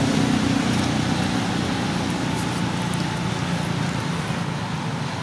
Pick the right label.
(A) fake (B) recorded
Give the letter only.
B